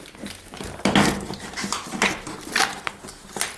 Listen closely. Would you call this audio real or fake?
real